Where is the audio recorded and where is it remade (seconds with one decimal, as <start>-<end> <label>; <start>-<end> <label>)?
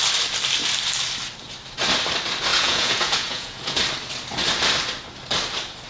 0.0-2.5 recorded; 2.5-3.8 remade; 3.8-5.9 recorded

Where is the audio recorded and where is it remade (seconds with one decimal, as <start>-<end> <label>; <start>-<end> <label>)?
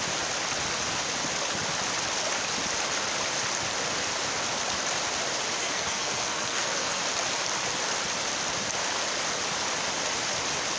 0.0-5.6 recorded; 5.6-7.0 remade; 7.0-10.8 recorded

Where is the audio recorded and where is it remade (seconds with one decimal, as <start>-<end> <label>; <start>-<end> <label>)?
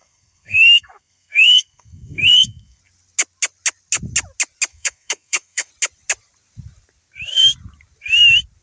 0.0-2.8 remade; 2.8-4.7 recorded; 4.7-5.7 remade; 5.7-8.6 recorded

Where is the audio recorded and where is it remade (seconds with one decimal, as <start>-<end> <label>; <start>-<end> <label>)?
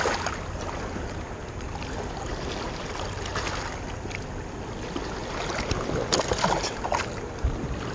0.0-7.9 recorded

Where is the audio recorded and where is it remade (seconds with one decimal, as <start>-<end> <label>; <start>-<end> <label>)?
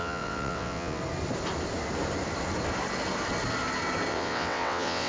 0.0-1.0 remade; 1.0-4.1 recorded; 4.1-5.1 remade